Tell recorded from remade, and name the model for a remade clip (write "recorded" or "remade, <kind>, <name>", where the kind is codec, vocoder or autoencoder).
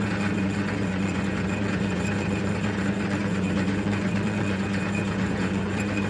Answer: remade, vocoder, Vocos